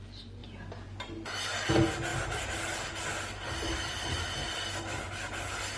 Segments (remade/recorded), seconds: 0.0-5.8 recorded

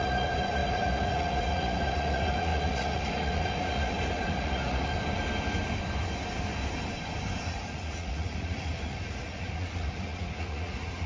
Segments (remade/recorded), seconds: 0.0-4.9 remade; 4.9-7.4 recorded; 7.4-11.1 remade

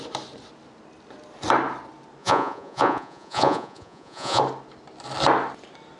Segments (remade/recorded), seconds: 0.0-2.2 recorded; 2.2-4.4 remade; 4.4-6.0 recorded

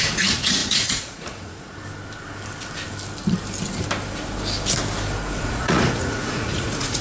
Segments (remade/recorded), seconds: 0.0-1.8 remade; 1.8-5.4 recorded; 5.4-7.0 remade

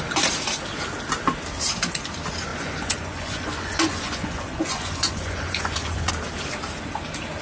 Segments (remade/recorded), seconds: 0.0-2.5 recorded; 2.5-6.1 remade; 6.1-7.4 recorded

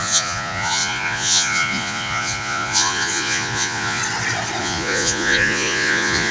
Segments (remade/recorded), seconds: 0.0-4.0 remade; 4.0-4.6 recorded; 4.6-6.3 remade

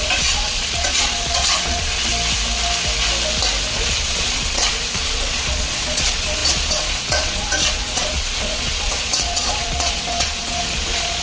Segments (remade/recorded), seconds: 0.0-2.1 remade; 2.1-3.7 recorded; 3.7-11.2 remade